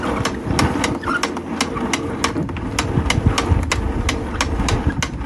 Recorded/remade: recorded